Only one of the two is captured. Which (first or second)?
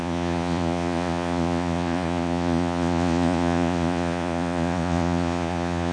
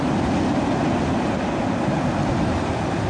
second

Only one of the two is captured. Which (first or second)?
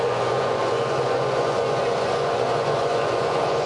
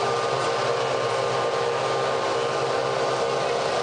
second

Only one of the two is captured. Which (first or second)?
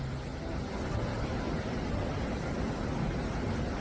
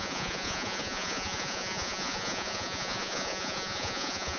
first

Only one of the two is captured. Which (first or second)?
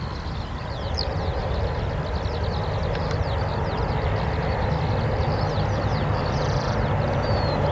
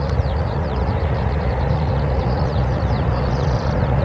first